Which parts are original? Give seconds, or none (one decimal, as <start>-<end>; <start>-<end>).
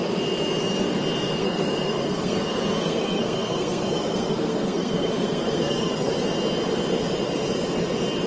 0.0-1.4; 6.1-8.3